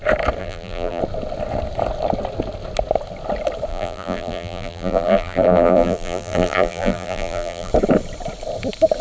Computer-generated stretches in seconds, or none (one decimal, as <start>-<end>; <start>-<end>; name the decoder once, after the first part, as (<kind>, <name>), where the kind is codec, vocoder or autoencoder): 0.4-1.0 (vocoder, BigVGAN v2); 3.7-7.7